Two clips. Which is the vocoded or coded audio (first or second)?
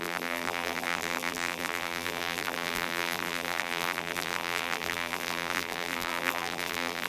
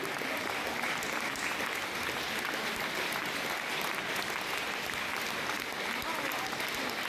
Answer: first